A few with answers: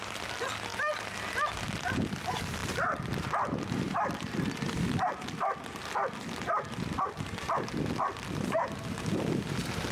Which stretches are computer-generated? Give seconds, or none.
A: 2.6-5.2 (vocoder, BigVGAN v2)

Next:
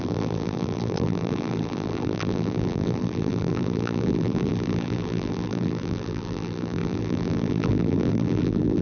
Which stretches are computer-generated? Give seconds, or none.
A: 0.0-8.8 (vocoder, BigVGAN v2)

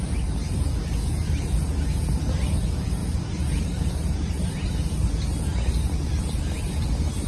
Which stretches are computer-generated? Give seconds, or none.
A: none

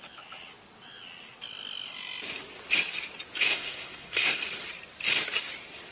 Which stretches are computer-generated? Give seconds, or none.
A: 3.4-4.4 (codec, SNAC)

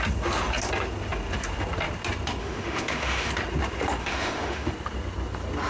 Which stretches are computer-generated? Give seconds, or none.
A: 2.4-3.3 (autoencoder, DAC-VAE); 4.0-4.7

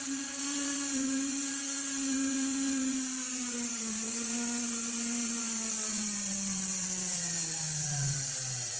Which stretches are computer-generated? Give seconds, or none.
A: 0.0-8.8 (vocoder, WaveNeXt)

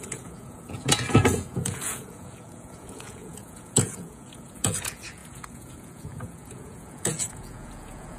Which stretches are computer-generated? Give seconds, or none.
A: 0.0-8.2 (vocoder, Vocos)

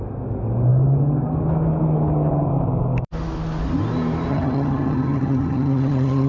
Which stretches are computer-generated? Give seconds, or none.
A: 4.3-6.3 (vocoder, HiFi-GAN)